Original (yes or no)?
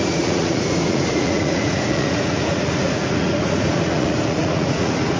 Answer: no